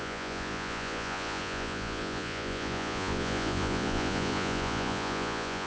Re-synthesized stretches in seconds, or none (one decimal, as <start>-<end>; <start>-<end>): 0.0-5.7